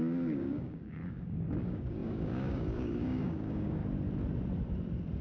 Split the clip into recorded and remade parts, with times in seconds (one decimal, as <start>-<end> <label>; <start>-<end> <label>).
0.0-3.8 remade; 3.8-5.2 recorded